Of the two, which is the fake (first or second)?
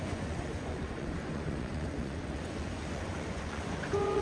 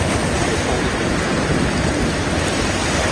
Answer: first